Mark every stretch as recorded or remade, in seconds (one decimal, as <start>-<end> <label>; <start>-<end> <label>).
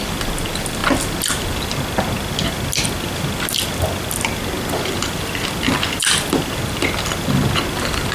0.0-8.1 recorded